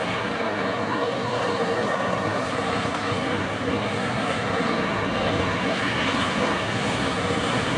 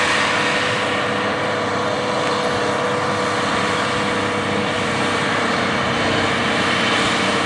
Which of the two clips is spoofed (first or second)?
first